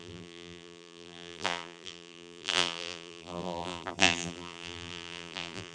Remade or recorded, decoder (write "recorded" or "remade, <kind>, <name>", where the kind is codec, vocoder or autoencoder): remade, vocoder, BigVGAN v2